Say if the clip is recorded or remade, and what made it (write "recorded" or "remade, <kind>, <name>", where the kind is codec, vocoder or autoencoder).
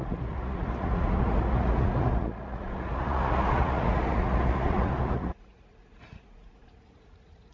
remade, vocoder, Vocos